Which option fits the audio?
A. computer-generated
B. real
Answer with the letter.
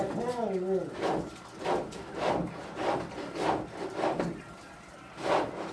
B